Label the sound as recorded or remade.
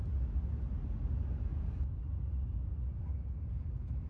recorded